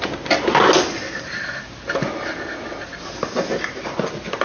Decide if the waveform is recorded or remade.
recorded